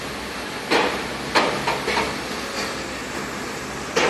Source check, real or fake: real